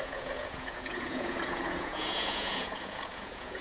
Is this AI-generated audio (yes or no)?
yes